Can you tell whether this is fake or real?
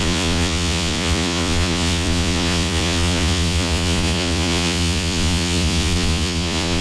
fake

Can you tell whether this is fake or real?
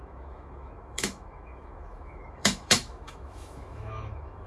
fake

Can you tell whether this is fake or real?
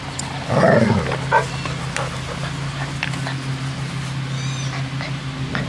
real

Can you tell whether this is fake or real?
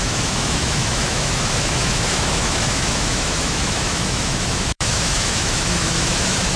fake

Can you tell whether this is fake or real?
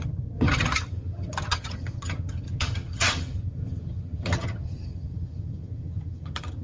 fake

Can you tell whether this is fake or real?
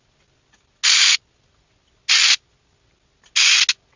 real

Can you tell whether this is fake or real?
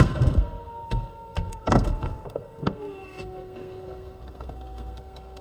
fake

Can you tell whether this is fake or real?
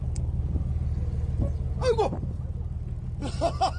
real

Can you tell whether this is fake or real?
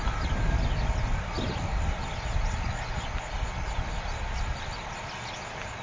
real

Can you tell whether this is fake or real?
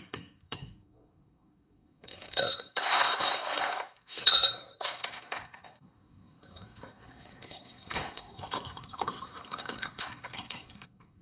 fake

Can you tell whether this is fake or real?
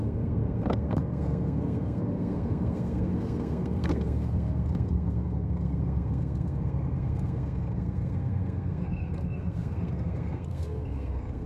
fake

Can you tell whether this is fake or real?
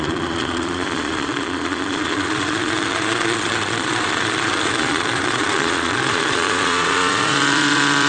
fake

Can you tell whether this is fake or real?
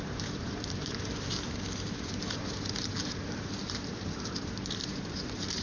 fake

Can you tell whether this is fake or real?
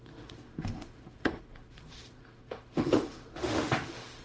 fake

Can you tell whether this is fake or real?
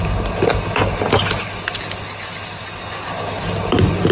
real